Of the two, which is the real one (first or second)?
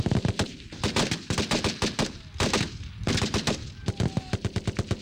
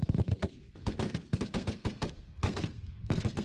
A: first